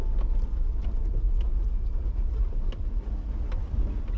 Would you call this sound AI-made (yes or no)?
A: no